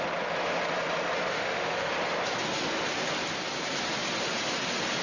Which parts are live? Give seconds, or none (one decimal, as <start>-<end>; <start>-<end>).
0.0-1.3; 1.9-5.0